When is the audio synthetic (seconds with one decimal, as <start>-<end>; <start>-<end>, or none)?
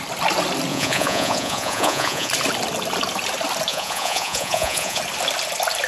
0.7-2.3; 3.7-5.0